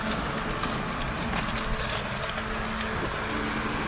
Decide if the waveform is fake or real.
real